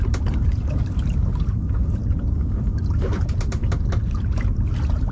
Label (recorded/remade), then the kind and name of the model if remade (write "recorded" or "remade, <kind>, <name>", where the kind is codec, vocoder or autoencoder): remade, vocoder, BigVGAN v2